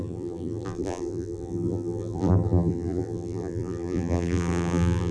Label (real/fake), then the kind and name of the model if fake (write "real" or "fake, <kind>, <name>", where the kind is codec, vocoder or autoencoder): fake, vocoder, BigVGAN v2